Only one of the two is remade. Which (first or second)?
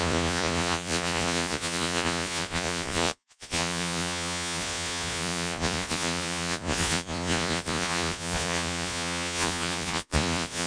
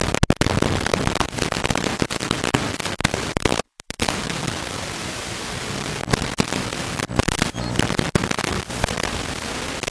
first